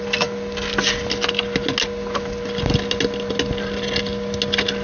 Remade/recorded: recorded